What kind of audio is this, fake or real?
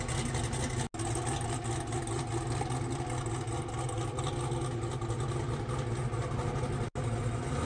real